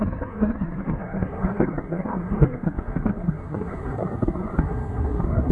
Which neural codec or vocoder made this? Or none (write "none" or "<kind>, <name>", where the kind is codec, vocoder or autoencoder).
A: codec, SNAC